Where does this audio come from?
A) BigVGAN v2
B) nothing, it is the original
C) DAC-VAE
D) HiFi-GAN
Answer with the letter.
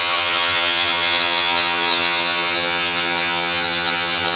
D